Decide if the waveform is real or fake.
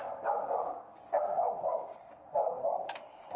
fake